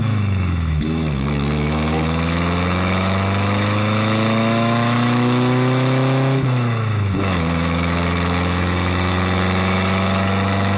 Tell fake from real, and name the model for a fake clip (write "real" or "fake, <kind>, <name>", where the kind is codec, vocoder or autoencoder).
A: fake, autoencoder, DAC-VAE